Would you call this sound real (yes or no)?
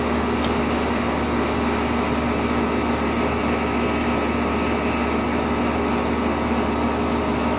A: yes